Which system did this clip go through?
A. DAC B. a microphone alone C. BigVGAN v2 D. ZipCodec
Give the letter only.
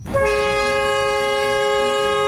A